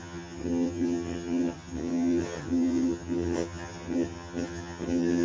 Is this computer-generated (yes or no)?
yes